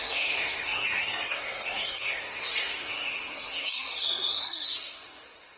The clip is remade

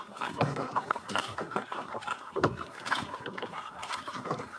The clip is remade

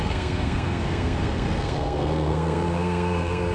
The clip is remade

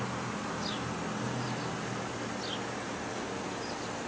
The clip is recorded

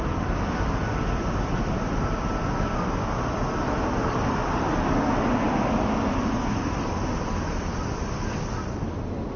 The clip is recorded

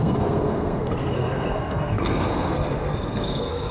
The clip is remade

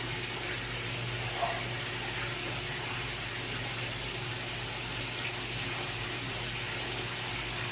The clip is recorded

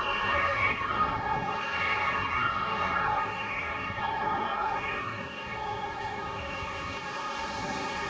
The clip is remade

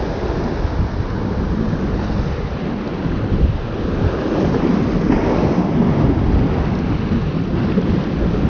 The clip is recorded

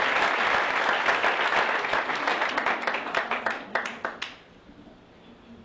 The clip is recorded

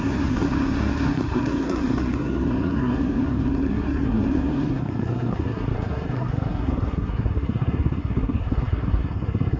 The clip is remade